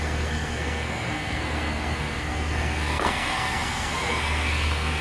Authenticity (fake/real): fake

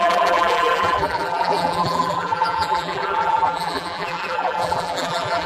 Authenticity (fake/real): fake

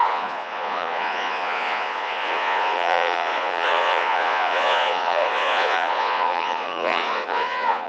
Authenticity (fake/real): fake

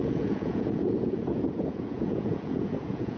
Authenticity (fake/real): fake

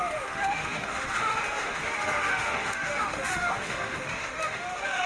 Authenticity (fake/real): fake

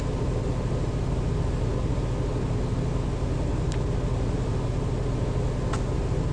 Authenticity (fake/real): real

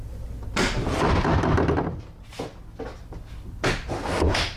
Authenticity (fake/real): real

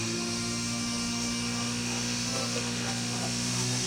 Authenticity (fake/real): fake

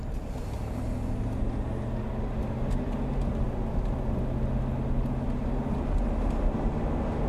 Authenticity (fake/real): real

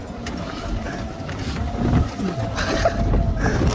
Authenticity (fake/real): real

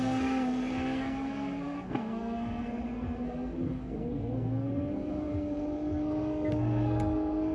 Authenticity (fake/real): fake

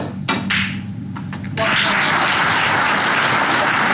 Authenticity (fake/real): real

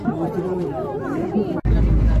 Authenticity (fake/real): real